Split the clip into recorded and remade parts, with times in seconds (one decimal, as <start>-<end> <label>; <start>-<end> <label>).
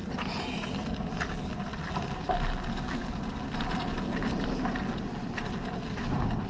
0.0-6.5 recorded